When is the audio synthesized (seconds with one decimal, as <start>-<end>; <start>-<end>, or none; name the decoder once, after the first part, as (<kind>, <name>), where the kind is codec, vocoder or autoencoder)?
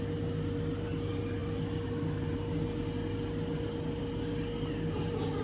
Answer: none